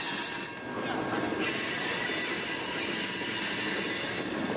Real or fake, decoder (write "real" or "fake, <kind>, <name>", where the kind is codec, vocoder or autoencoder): real